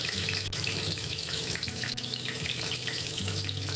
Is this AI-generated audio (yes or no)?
yes